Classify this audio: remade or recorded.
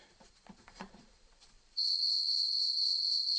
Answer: remade